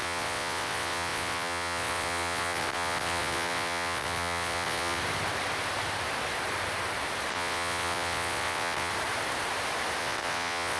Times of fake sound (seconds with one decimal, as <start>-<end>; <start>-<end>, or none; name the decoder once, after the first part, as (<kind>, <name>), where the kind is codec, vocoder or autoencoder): 0.0-5.0 (vocoder, WaveNeXt); 7.3-8.9; 10.0-10.8